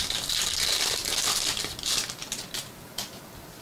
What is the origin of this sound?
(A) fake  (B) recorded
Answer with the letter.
B